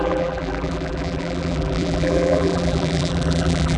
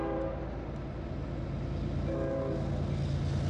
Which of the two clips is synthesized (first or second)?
first